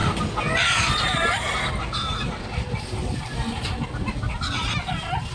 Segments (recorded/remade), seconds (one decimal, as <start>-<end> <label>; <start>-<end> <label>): 0.0-5.3 recorded